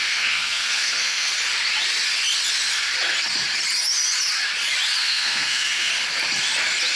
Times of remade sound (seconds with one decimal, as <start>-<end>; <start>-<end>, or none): 0.0-1.3; 5.0-5.9

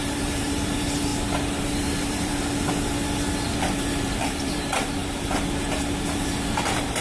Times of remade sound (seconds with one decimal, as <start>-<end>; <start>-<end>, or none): 0.0-1.1; 1.6-2.3; 3.6-5.0; 6.1-7.0

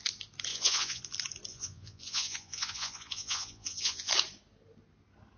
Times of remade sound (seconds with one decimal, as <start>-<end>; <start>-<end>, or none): 0.5-1.0; 1.5-4.1

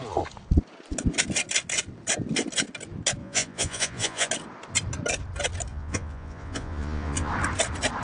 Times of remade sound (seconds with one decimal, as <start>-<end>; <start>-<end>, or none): 3.2-4.3; 5.7-7.3